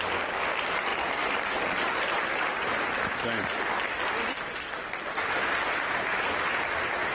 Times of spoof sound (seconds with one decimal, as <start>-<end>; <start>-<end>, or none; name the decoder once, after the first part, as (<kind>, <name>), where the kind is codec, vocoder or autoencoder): none